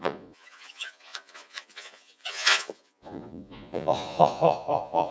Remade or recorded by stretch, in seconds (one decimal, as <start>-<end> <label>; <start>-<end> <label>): 0.0-5.1 remade